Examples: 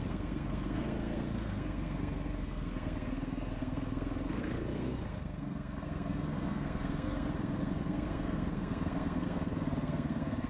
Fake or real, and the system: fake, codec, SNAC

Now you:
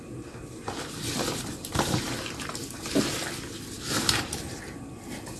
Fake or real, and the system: real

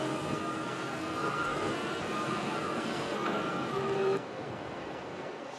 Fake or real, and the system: fake, codec, SNAC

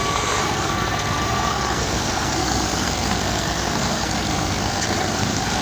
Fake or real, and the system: fake, codec, SNAC